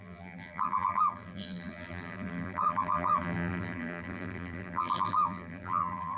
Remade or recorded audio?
remade